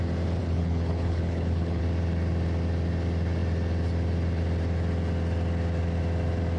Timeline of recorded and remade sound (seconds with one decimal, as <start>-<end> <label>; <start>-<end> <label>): 0.0-0.4 recorded; 0.4-1.8 remade; 1.8-6.6 recorded